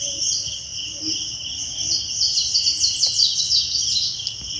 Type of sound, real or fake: real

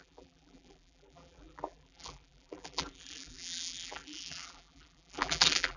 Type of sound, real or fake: fake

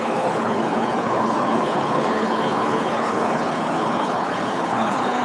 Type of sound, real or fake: fake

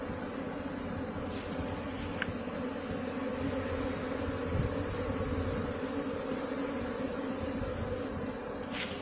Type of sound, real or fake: real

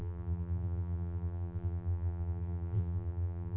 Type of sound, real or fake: fake